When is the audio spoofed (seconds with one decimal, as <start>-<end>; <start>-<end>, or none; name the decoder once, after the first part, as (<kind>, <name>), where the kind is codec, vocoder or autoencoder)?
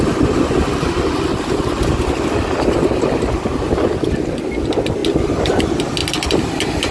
6.0-6.5 (vocoder, BigVGAN v2)